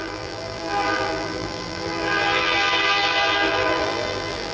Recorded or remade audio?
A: remade